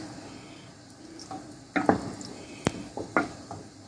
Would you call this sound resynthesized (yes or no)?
no